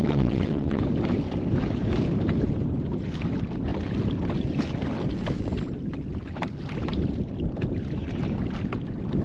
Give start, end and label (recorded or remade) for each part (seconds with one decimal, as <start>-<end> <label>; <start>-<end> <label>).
0.0-0.8 remade; 0.8-9.2 recorded